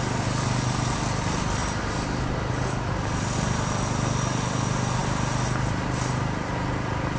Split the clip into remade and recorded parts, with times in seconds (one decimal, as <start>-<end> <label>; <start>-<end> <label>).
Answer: 0.0-7.2 recorded